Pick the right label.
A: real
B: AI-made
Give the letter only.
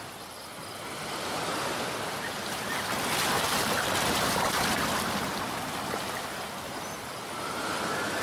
A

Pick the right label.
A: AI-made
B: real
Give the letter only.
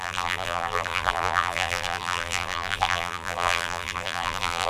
A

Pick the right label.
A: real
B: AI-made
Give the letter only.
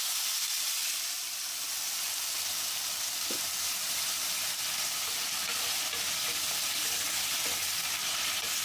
A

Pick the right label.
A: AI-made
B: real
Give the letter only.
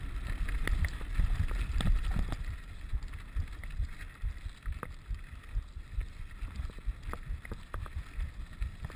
B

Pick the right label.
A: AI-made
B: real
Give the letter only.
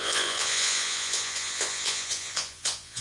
A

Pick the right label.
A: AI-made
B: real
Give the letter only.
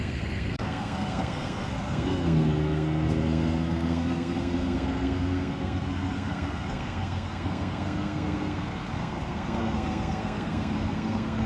A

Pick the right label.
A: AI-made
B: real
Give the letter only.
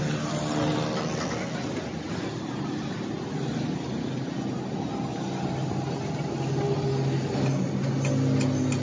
B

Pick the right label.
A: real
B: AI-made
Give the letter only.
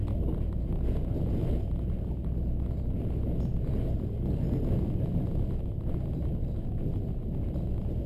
A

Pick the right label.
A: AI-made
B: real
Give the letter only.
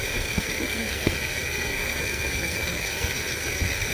A